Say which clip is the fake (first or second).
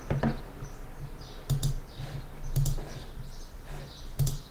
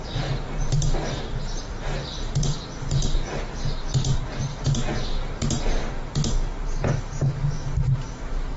second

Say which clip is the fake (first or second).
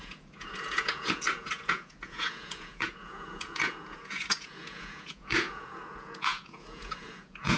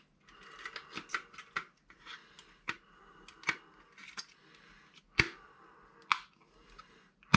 first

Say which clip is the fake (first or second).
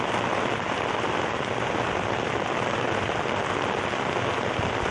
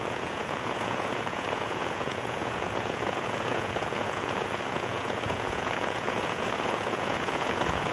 second